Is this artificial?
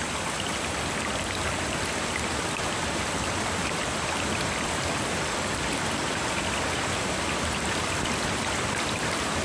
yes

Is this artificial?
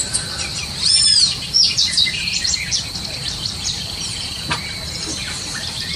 yes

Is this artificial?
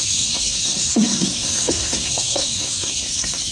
yes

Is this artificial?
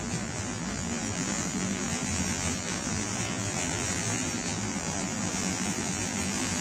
yes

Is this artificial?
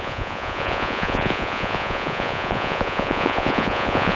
yes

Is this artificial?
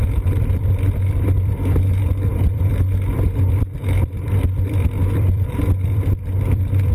yes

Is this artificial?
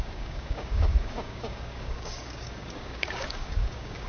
yes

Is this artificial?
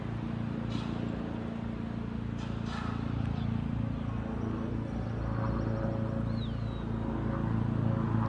no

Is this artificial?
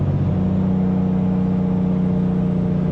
no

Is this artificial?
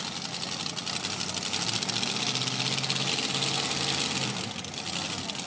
no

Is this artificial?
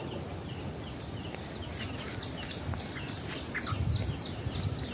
no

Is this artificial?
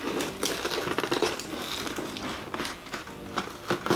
no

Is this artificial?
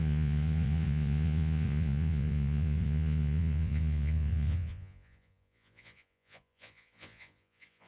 yes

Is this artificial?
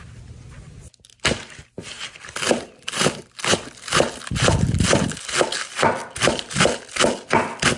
no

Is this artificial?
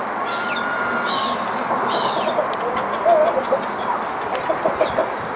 no